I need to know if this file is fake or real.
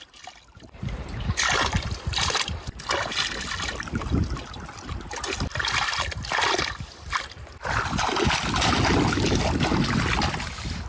real